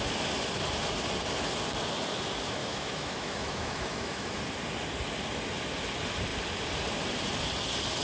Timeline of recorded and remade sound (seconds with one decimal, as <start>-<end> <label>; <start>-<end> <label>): 0.0-2.6 recorded; 2.6-4.4 remade; 4.4-8.0 recorded